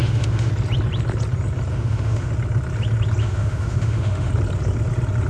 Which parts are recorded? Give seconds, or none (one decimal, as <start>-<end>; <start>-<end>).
0.5-1.7; 2.3-3.2; 4.3-5.3